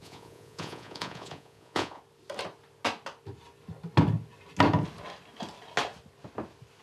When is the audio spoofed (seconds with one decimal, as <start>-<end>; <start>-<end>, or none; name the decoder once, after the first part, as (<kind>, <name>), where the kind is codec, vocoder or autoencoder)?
0.0-2.0 (vocoder, Vocos)